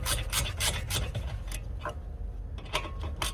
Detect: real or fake real